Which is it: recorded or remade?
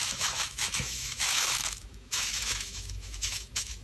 remade